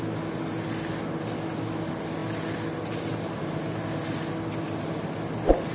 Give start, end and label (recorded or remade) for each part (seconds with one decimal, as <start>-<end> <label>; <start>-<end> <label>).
0.0-5.7 recorded